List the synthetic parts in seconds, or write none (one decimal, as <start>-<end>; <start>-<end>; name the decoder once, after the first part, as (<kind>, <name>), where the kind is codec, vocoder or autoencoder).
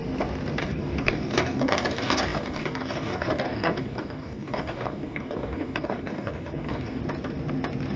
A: 0.6-7.0 (codec, DAC)